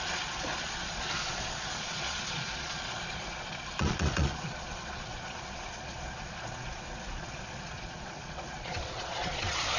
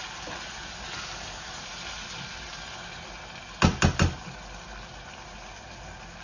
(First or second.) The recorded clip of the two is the second